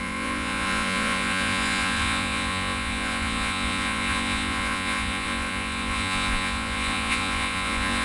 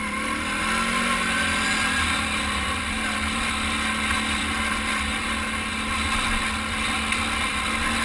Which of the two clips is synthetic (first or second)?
first